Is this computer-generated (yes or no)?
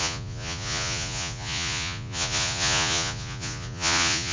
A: yes